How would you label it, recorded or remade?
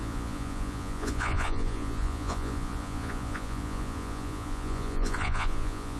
remade